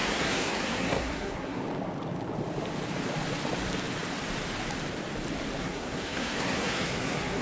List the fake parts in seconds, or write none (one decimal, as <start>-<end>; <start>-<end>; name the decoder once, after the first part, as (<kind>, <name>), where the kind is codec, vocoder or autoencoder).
0.0-1.6 (codec, SNAC); 5.6-7.4